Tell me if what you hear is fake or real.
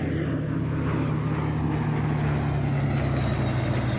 real